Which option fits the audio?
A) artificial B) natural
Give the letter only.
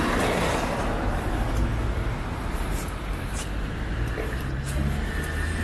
B